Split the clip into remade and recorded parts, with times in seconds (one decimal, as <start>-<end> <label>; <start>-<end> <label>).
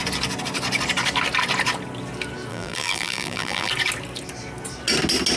0.0-2.5 recorded; 2.5-3.7 remade; 3.7-5.4 recorded